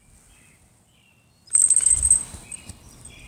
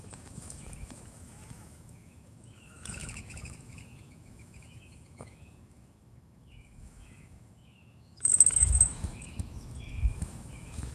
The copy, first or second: second